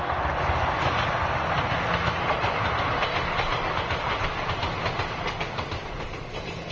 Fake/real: real